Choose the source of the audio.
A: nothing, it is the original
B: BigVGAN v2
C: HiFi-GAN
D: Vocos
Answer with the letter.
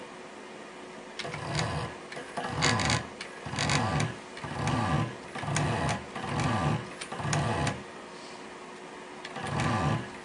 A